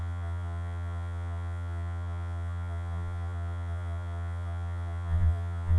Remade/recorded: remade